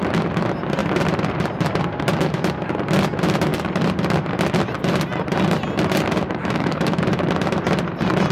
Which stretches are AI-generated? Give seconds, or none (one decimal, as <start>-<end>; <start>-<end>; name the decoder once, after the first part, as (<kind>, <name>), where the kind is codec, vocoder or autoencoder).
6.4-7.0 (autoencoder, DAC-VAE)